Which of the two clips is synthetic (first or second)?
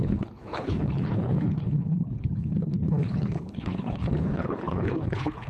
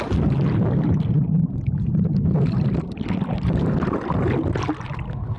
first